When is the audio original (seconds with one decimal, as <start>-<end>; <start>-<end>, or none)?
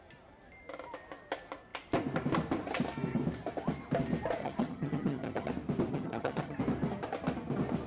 0.0-4.4; 5.5-5.9; 6.6-7.9